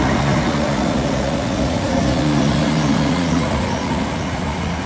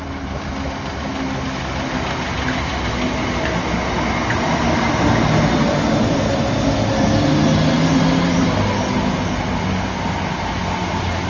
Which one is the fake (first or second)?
first